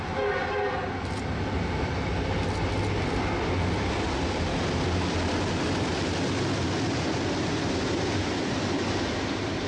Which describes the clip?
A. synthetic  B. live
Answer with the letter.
B